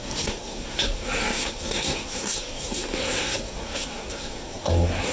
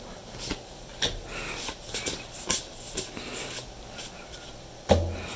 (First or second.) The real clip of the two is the second